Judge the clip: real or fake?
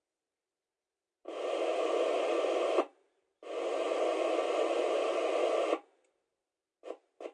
real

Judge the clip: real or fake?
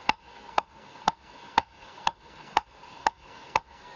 fake